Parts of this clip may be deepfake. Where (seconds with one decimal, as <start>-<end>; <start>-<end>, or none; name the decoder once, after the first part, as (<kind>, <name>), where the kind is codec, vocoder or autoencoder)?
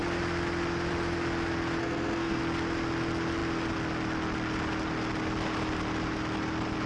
1.8-2.4 (codec, SNAC)